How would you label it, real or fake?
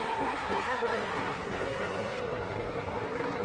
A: fake